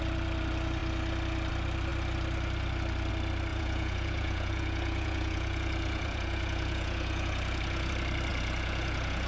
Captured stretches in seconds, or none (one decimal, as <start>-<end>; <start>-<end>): 0.0-3.5; 7.9-8.3